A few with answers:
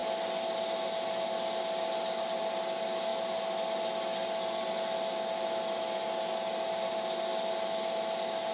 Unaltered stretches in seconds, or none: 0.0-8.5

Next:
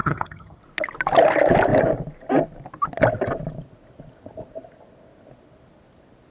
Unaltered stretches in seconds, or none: 0.6-6.3

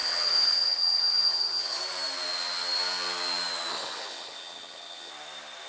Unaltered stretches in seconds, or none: 1.8-3.7; 5.1-5.7